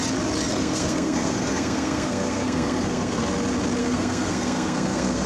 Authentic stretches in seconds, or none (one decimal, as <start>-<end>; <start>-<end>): 0.0-0.6; 3.2-3.8